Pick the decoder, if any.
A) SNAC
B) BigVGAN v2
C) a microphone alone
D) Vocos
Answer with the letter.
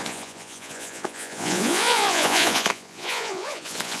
D